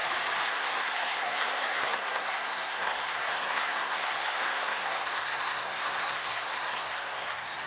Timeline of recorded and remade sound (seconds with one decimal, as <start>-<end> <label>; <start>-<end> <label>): 0.0-0.5 recorded; 0.5-7.7 remade